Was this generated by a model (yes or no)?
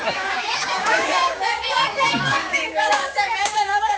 yes